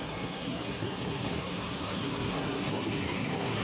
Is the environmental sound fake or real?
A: fake